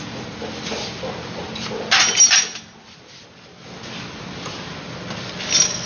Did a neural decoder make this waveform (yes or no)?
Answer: no